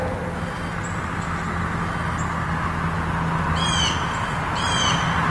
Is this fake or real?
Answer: real